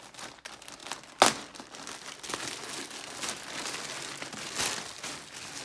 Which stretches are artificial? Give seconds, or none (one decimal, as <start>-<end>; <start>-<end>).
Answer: none